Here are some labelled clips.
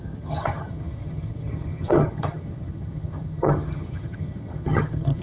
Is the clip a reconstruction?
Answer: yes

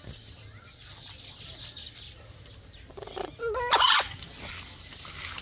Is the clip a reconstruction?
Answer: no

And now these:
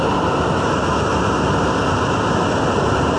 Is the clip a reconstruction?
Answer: no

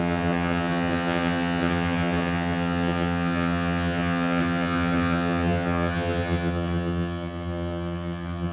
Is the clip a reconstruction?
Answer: yes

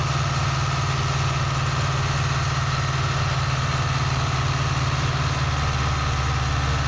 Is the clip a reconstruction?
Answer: no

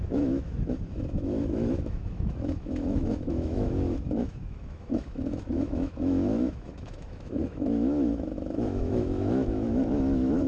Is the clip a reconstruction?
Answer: yes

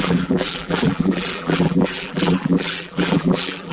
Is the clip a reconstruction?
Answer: yes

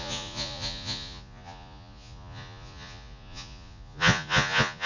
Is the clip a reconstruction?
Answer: yes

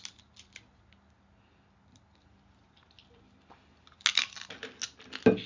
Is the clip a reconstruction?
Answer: no